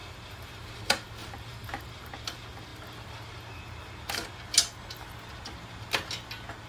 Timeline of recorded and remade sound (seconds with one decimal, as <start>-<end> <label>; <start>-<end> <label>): 0.0-0.7 remade; 0.7-1.2 recorded; 1.2-2.1 remade; 2.1-6.7 recorded